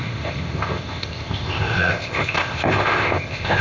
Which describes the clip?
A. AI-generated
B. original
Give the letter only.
A